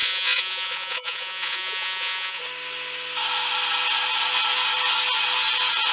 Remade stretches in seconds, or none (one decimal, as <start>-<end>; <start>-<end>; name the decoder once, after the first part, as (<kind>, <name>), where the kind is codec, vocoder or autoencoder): 0.0-2.4 (vocoder, Vocos)